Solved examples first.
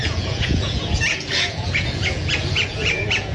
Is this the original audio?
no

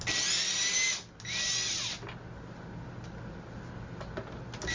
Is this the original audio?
yes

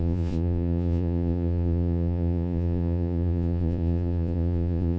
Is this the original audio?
no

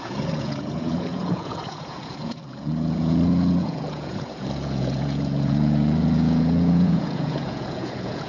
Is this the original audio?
no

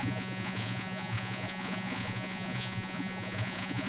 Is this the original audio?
no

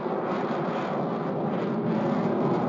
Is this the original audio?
yes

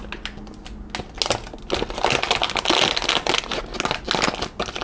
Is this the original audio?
yes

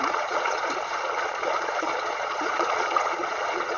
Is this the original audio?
no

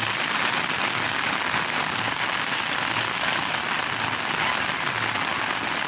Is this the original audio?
yes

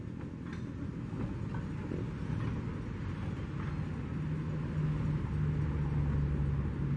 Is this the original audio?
yes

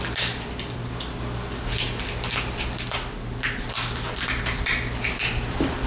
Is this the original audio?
yes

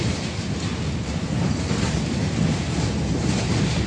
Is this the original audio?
yes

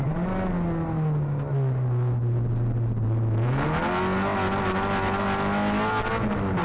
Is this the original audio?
yes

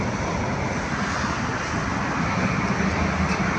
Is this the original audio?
yes